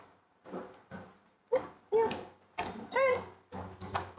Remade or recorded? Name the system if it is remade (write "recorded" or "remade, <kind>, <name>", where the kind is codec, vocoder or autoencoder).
remade, vocoder, BigVGAN v2